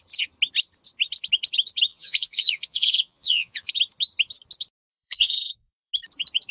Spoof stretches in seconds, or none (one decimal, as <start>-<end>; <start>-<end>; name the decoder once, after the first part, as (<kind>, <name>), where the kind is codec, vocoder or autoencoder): 1.9-3.7 (vocoder, Vocos); 4.9-5.9